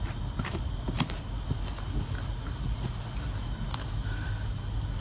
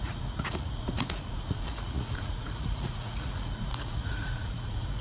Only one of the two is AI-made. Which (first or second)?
second